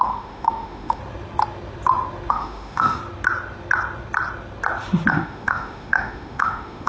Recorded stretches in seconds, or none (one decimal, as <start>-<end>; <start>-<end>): 1.0-2.3; 3.0-5.1